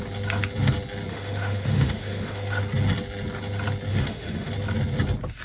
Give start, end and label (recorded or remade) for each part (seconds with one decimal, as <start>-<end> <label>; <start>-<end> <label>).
0.0-1.1 recorded; 1.1-2.6 remade; 2.6-3.9 recorded; 3.9-4.5 remade; 4.5-5.4 recorded